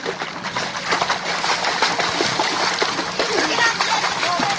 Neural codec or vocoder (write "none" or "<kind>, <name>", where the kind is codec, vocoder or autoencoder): none